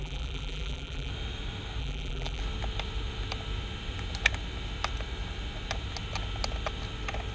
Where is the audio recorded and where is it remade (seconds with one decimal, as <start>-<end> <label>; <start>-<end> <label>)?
0.0-1.1 remade; 1.1-1.8 recorded; 1.8-2.4 remade; 2.4-7.3 recorded